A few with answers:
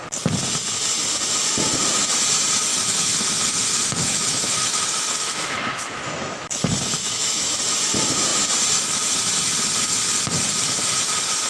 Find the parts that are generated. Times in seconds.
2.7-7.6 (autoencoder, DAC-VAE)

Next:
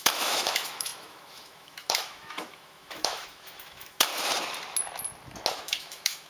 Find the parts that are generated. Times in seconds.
0.0-4.1 (autoencoder, DAC-VAE); 5.5-6.3

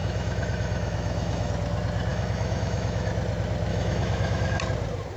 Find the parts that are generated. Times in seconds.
0.0-1.5 (autoencoder, DAC-VAE); 2.1-3.1; 3.7-4.6

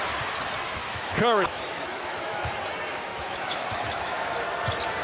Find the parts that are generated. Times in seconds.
0.8-2.5 (autoencoder, DAC-VAE); 3.1-4.3